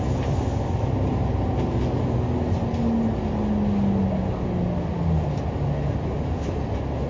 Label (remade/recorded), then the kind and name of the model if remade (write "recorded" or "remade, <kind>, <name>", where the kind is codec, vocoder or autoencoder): recorded